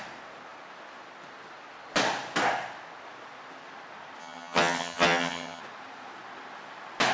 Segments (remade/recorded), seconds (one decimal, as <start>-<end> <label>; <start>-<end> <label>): 0.0-4.2 recorded; 4.2-5.6 remade; 5.6-7.1 recorded